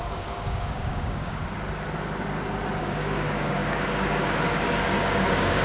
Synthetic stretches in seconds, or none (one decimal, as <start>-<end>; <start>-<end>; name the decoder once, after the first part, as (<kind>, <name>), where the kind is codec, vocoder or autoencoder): 0.0-1.4 (codec, DAC); 2.8-5.6